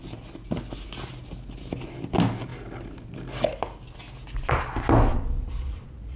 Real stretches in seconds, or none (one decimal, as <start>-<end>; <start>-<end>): 0.0-5.1